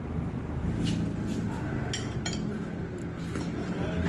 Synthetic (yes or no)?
no